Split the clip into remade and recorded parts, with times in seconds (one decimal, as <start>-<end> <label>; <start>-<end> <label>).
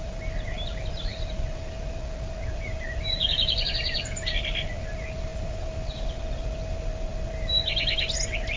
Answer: 0.0-8.6 recorded